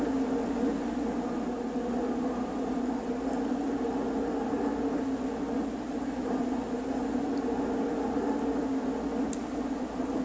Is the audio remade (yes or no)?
no